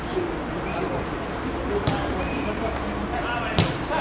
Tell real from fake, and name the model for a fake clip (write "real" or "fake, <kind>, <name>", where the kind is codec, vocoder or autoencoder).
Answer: real